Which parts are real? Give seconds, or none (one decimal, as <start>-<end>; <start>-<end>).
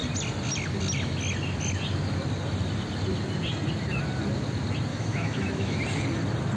0.0-4.9; 5.8-6.6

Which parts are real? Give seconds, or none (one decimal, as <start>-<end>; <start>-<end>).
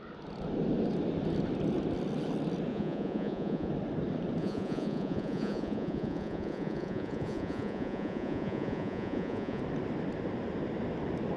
0.0-2.7; 3.7-4.4; 9.6-11.4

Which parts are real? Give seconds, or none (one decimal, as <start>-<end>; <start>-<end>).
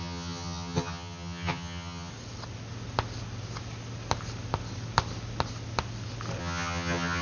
2.1-6.4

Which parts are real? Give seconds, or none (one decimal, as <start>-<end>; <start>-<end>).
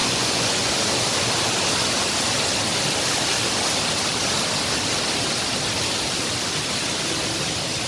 0.7-7.9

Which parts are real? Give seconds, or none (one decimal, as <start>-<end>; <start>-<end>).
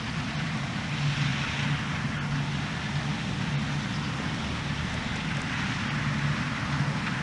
0.0-7.2